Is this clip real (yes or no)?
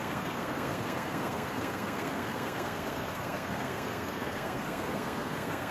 no